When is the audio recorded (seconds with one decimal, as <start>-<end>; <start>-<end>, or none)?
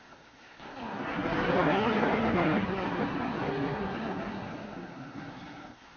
none